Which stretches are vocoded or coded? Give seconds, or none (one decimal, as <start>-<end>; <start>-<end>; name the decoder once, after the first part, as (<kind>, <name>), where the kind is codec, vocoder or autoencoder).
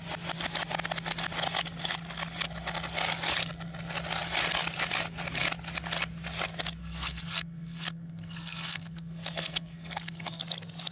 6.8-10.4 (codec, SNAC)